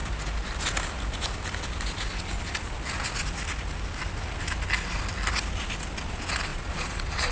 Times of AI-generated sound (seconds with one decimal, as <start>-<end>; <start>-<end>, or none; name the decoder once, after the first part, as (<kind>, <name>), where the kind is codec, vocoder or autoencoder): 6.5-7.3 (vocoder, Vocos)